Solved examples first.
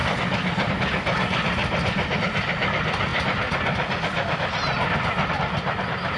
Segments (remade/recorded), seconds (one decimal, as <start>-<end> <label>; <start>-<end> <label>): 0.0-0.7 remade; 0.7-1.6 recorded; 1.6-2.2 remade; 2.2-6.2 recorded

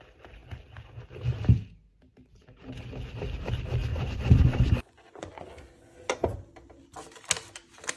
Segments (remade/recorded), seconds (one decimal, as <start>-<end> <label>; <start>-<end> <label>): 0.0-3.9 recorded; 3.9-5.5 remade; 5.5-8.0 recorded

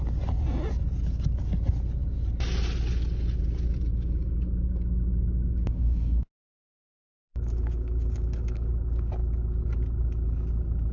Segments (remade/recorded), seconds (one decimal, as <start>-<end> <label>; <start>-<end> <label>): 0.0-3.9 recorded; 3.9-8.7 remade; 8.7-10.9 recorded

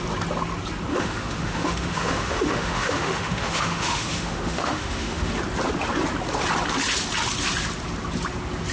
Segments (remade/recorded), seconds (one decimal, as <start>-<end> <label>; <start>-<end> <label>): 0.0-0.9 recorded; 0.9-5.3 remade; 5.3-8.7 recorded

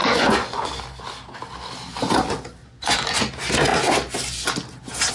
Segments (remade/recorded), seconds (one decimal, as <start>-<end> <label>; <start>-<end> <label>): 0.0-0.7 remade; 0.7-2.6 recorded; 2.6-3.2 remade; 3.2-5.1 recorded

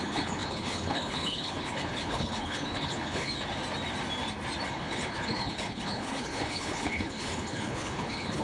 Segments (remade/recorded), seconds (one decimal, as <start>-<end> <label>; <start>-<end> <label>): 0.0-3.3 remade; 3.3-4.7 recorded; 4.7-8.4 remade